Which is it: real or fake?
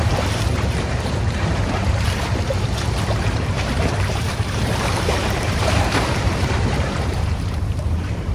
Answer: fake